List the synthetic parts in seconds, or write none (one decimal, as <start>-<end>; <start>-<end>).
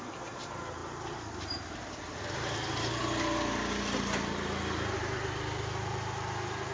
none